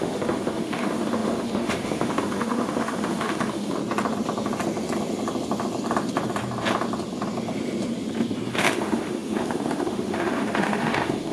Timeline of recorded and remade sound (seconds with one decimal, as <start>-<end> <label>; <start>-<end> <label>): 0.0-3.8 remade; 3.8-8.5 recorded; 8.5-11.3 remade